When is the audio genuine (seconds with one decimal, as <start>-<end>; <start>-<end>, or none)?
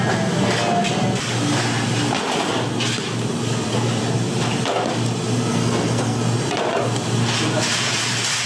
0.0-5.5; 6.2-8.5